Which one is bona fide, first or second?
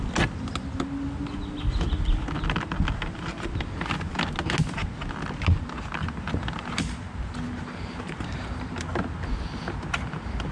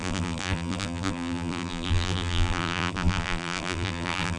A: first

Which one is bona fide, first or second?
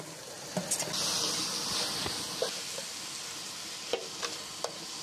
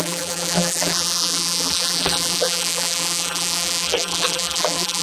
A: first